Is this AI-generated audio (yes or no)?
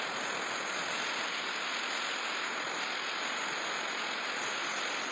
no